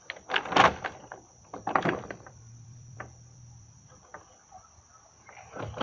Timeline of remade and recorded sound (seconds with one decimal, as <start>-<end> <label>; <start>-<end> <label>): 0.0-0.7 recorded; 0.7-4.1 remade; 4.1-5.8 recorded